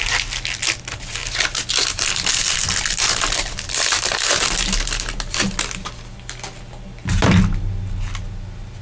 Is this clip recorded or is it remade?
recorded